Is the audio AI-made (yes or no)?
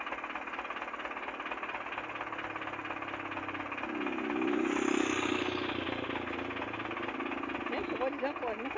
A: no